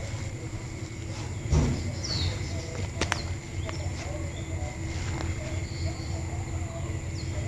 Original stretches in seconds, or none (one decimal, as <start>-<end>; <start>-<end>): 0.0-7.5